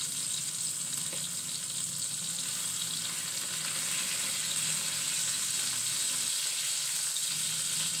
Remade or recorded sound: recorded